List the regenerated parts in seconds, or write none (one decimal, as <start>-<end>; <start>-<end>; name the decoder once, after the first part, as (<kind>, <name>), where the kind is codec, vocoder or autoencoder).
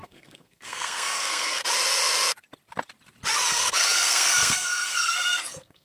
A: 0.0-1.6 (codec, SNAC); 3.5-5.8